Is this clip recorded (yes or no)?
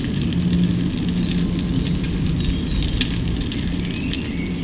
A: yes